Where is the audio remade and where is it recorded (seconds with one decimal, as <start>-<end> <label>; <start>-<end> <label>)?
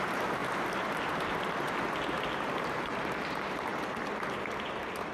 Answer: 0.0-0.4 remade; 0.4-2.4 recorded; 2.4-3.7 remade; 3.7-5.1 recorded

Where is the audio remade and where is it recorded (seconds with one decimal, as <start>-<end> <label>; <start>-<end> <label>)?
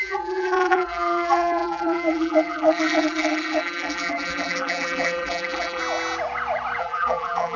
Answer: 0.0-5.8 remade; 5.8-6.8 recorded; 6.8-7.6 remade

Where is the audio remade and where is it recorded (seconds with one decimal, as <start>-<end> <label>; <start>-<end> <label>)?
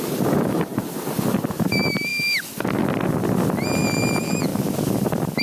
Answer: 0.0-5.4 recorded